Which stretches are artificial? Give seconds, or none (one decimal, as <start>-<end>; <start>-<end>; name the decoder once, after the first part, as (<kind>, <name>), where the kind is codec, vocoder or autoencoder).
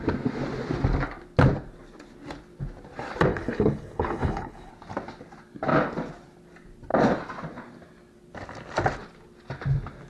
3.3-4.7 (codec, HILCodec)